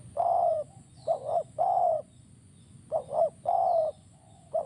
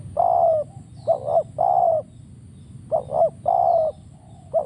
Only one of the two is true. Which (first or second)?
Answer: second